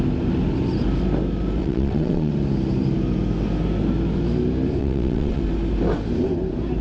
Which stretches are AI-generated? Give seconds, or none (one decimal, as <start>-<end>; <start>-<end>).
1.6-2.3; 4.8-5.4